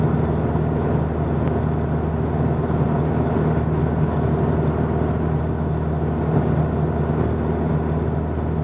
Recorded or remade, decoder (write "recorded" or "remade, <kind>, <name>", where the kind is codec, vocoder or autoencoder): recorded